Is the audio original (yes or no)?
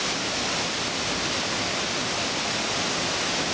yes